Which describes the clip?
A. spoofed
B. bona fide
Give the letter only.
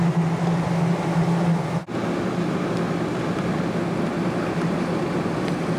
B